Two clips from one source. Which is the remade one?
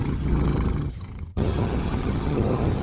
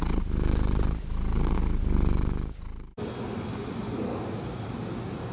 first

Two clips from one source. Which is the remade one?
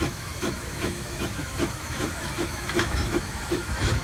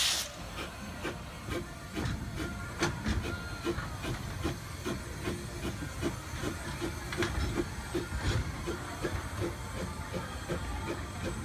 first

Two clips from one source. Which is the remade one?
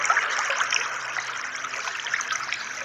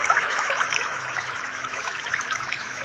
second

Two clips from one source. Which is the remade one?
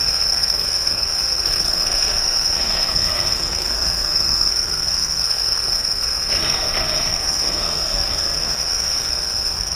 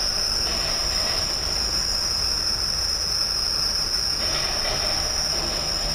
first